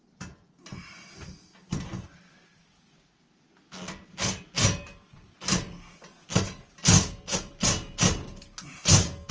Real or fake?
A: real